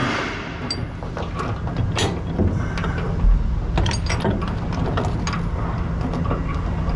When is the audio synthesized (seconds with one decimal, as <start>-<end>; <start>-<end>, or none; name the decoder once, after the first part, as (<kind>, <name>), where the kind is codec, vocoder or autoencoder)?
none